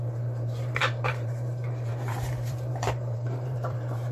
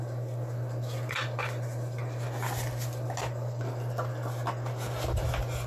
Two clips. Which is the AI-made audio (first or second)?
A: first